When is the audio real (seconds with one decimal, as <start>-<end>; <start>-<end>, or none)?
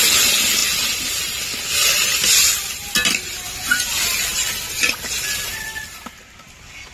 0.0-6.9